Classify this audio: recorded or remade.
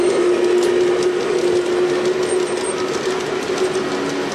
recorded